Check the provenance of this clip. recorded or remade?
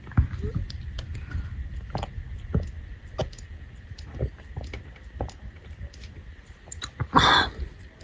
recorded